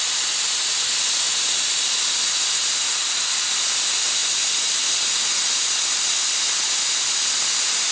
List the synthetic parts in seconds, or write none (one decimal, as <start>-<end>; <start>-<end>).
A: none